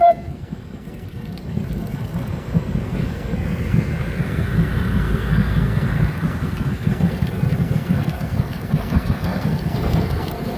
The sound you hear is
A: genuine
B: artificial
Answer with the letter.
B